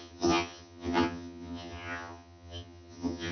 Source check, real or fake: fake